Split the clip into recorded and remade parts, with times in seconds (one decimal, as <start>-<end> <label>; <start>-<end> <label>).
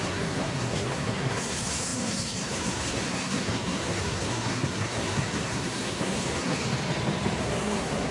0.0-6.6 remade; 6.6-7.4 recorded; 7.4-8.1 remade